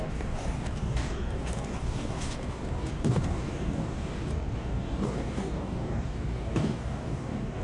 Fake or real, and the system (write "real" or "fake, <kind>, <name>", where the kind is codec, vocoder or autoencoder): fake, codec, DAC